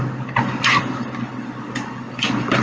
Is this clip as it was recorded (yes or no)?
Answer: yes